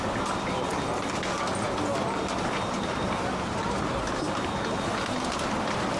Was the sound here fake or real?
real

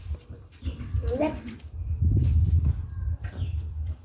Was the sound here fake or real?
fake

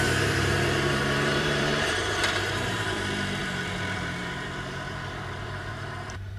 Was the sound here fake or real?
fake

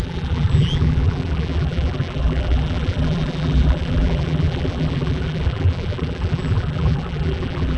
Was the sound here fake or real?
fake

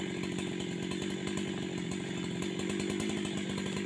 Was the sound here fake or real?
real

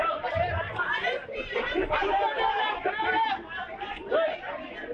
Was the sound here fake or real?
fake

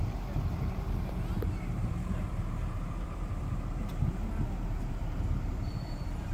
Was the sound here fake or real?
fake